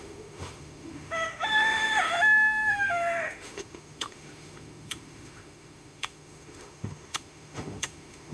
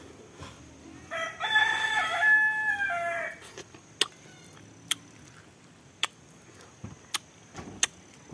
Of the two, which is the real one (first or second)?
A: second